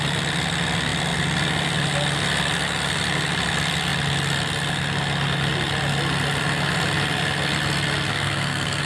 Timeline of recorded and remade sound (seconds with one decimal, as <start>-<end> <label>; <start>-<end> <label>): 0.0-8.1 recorded; 8.1-8.8 remade